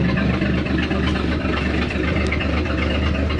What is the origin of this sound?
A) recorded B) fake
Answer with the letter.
A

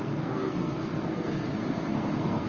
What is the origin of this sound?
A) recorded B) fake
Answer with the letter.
B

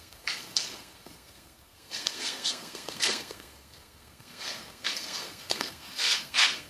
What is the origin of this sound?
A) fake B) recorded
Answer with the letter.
A